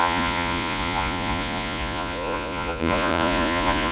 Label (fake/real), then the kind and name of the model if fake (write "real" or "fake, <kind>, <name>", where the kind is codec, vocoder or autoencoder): fake, vocoder, Vocos